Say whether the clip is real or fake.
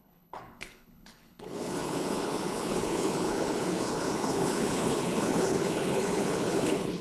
fake